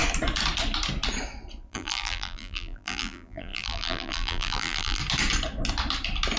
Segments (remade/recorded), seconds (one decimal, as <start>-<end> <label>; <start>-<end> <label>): 0.0-1.7 recorded; 1.7-5.0 remade; 5.0-6.4 recorded